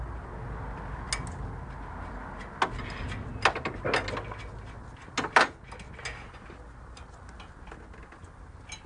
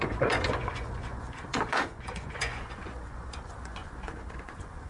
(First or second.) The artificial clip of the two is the second